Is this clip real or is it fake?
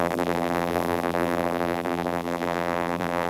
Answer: fake